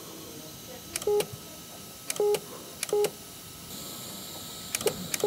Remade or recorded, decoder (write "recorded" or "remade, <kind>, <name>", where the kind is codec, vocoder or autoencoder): recorded